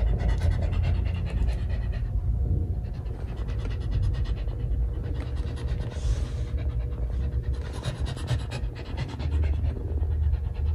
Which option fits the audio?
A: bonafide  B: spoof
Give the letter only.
A